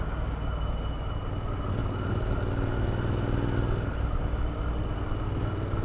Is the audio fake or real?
real